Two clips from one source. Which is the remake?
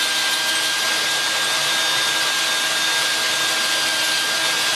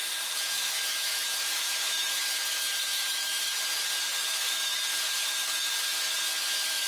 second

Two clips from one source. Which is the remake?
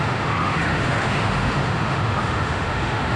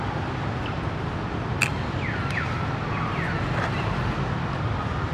first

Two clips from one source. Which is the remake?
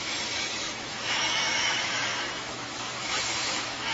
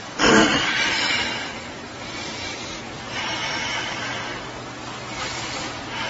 first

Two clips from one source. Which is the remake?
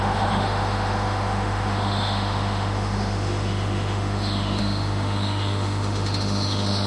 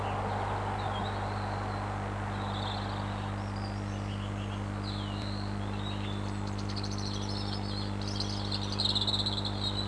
first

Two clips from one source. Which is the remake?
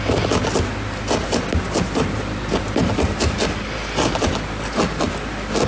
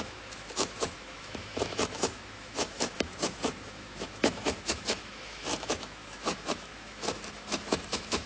second